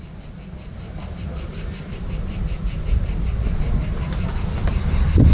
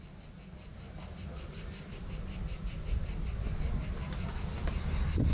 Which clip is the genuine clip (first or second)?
second